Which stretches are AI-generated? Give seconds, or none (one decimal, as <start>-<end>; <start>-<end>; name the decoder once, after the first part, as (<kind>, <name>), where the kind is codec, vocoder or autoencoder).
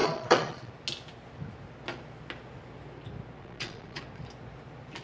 0.0-0.7 (vocoder, Vocos); 3.4-4.0